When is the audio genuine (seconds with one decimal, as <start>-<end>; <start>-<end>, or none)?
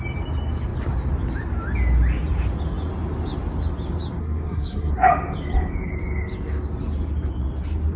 0.0-4.2; 4.9-8.0